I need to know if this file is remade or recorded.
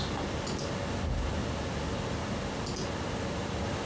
recorded